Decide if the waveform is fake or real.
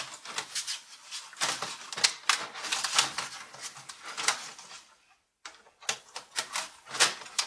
real